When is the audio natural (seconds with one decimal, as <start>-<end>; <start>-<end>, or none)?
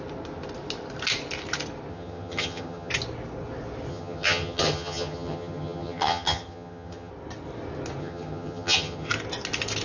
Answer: 0.0-1.9; 2.9-3.9; 7.1-8.0; 9.1-9.8